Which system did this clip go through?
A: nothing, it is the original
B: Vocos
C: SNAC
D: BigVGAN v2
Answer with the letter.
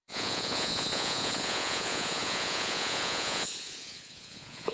B